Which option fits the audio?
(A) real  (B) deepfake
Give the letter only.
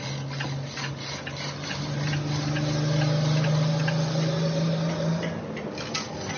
A